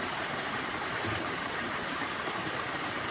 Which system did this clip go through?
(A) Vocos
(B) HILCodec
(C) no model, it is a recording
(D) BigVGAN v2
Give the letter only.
D